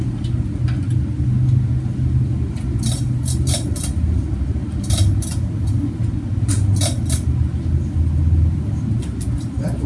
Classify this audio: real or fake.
real